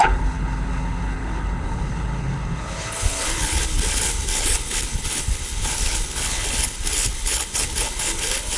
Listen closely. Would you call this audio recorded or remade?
remade